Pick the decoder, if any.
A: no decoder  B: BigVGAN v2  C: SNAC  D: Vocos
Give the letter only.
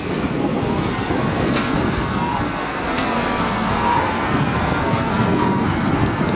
C